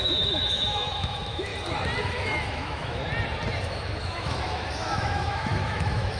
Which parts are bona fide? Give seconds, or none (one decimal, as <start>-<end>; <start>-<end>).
1.5-2.0; 3.0-3.6